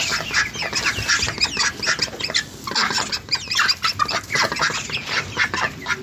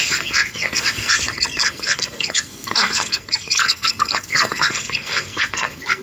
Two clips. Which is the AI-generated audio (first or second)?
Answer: second